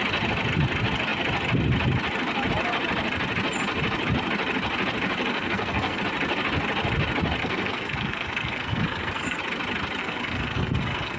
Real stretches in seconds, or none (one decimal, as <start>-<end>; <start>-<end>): 0.0-5.3; 6.0-7.4; 9.4-10.0

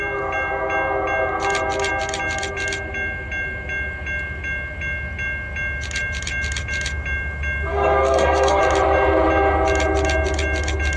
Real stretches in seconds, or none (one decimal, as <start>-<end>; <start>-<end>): 0.0-7.7; 8.6-11.0

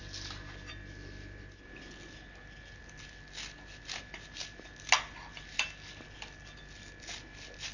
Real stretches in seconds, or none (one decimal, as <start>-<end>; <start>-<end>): 0.0-7.7

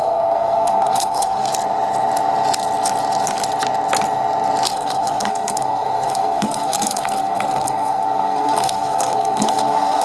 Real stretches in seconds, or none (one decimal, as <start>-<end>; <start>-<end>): 1.5-4.7

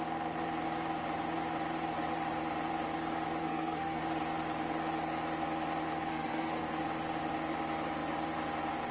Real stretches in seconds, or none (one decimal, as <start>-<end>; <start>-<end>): 0.0-3.4; 4.0-6.1; 6.8-8.9

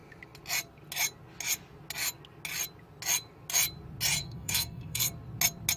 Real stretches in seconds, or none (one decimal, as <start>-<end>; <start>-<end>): 0.0-4.2; 5.1-5.8